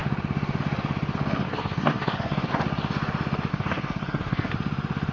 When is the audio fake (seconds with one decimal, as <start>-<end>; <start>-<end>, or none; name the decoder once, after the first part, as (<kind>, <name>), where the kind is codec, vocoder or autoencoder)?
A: 1.4-2.5 (codec, SNAC); 3.5-4.5